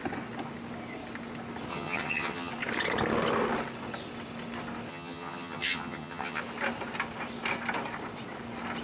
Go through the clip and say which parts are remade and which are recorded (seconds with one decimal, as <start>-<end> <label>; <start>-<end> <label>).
0.0-1.7 recorded; 1.7-2.5 remade; 2.5-4.9 recorded; 4.9-6.4 remade; 6.4-8.8 recorded